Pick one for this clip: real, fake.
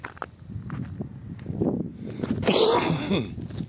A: real